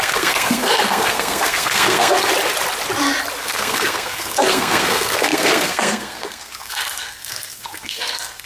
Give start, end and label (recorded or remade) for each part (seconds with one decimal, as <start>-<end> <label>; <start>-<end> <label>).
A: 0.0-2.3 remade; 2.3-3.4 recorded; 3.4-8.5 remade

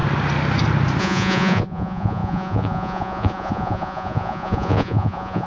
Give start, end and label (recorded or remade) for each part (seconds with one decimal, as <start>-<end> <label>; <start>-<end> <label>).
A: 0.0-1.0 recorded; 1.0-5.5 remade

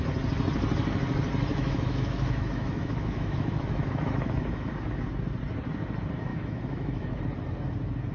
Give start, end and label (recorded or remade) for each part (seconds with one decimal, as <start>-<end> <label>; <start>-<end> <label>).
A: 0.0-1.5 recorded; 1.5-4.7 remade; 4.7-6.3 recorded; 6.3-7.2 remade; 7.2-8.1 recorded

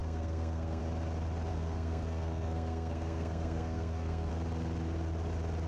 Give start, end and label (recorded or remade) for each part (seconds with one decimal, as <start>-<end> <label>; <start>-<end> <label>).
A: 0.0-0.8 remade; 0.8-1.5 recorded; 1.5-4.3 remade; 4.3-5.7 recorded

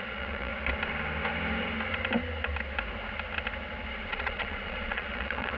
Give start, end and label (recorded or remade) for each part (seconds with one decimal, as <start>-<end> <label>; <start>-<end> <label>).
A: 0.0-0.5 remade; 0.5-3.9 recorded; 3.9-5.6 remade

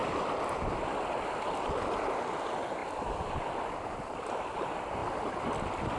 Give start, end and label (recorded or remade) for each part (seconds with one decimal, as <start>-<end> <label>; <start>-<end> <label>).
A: 0.0-2.8 recorded; 2.8-4.2 remade; 4.2-6.0 recorded